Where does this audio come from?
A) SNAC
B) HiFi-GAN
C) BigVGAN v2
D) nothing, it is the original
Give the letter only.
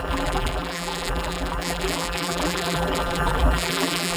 C